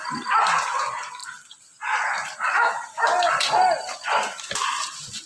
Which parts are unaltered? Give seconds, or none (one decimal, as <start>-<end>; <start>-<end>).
0.0-5.3